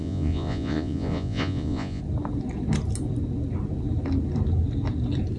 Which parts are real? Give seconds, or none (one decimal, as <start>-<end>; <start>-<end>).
2.0-5.4